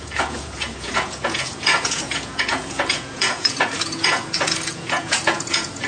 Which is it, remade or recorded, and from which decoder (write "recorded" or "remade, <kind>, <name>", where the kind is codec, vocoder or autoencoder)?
remade, vocoder, Vocos